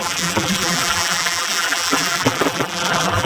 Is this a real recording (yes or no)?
no